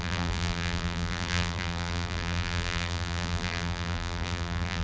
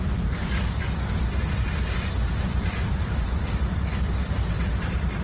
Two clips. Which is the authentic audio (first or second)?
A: second